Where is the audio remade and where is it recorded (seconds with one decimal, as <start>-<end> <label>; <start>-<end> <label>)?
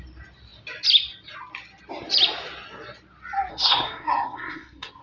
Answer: 0.0-3.5 recorded; 3.5-5.0 remade